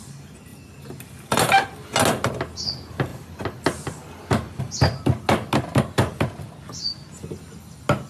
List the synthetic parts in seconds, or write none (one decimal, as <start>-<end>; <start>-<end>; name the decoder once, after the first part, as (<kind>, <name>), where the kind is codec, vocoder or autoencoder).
none